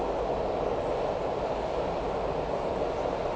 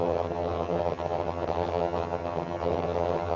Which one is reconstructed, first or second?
second